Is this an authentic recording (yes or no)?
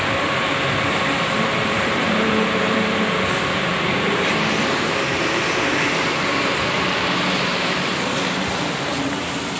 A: no